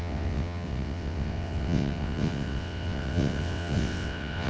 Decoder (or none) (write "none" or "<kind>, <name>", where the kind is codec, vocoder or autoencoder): vocoder, WaveNeXt